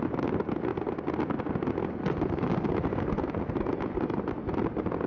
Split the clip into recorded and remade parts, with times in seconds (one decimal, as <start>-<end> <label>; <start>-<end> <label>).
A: 0.0-0.7 remade; 0.7-3.4 recorded; 3.4-5.1 remade